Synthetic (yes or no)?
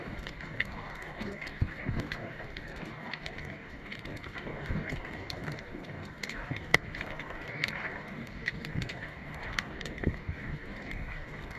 yes